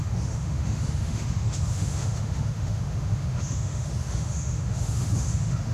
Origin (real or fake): fake